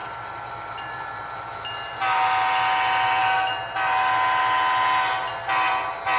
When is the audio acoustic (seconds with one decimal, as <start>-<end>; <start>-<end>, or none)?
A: 0.0-6.2